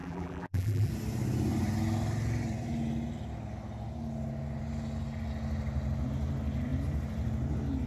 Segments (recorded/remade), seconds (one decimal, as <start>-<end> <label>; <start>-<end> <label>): 0.0-0.9 remade; 0.9-7.9 recorded